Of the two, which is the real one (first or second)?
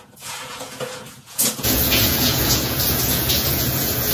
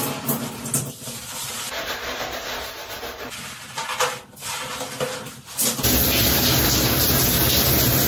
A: second